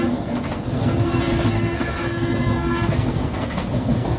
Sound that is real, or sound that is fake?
fake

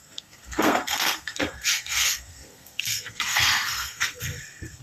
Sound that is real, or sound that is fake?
fake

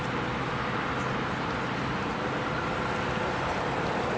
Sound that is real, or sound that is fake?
real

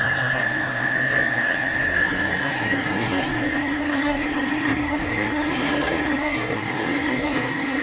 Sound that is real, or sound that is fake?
fake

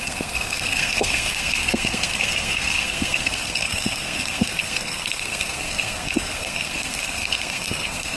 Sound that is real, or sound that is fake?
fake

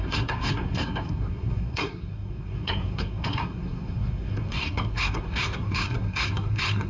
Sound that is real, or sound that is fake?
fake